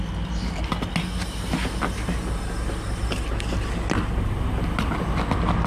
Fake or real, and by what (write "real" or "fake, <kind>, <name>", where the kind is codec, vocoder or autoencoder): real